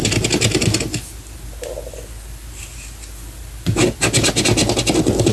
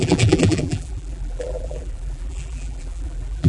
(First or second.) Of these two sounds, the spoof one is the second